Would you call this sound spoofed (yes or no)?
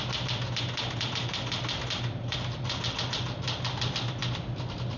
no